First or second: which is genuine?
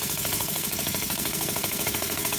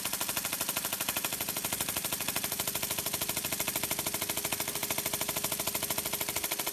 second